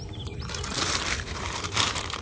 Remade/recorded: remade